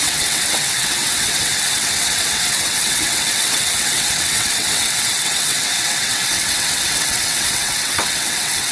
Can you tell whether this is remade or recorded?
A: remade